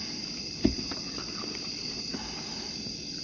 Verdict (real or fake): real